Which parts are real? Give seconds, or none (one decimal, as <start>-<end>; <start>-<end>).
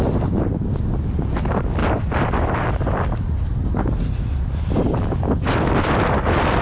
0.0-6.6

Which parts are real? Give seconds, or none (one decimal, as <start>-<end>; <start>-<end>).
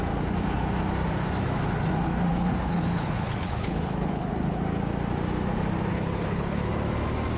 0.0-2.3; 4.6-5.9; 6.7-7.4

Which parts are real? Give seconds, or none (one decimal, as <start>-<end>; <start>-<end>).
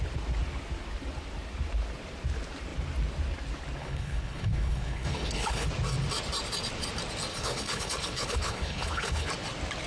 0.0-3.8; 5.7-7.3; 9.3-9.9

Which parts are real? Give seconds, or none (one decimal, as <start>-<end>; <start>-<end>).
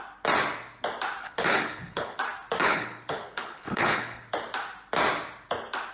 0.0-1.2; 2.2-2.6; 4.3-5.9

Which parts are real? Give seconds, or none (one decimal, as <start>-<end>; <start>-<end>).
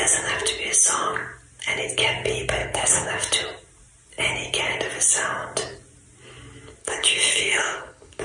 0.0-2.6; 3.1-6.8